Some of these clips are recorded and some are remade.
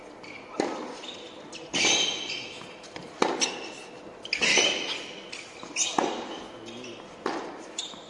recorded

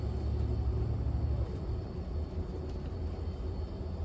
recorded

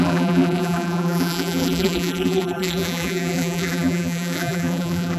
remade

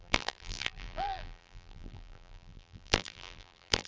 remade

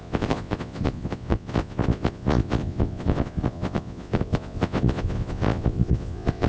remade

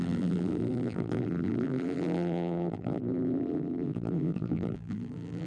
remade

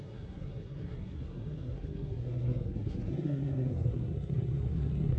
remade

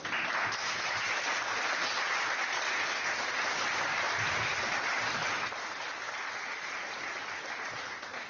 recorded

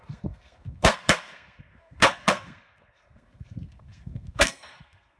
remade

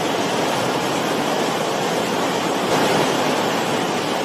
recorded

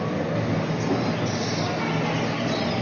recorded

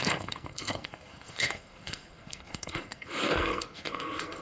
remade